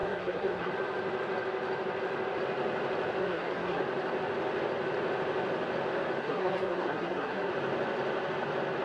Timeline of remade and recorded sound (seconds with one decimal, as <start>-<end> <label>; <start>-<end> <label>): 0.0-0.7 remade; 0.7-3.2 recorded; 3.2-3.8 remade; 3.8-6.2 recorded; 6.2-7.5 remade; 7.5-8.8 recorded

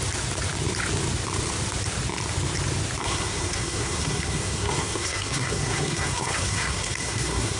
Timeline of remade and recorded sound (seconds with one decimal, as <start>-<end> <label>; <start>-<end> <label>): 0.0-3.0 recorded; 3.0-7.6 remade

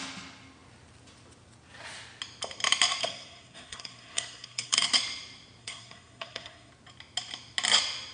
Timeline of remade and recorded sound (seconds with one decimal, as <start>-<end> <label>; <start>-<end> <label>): 0.0-3.0 recorded; 3.0-4.9 remade; 4.9-5.6 recorded; 5.6-6.7 remade; 6.7-8.1 recorded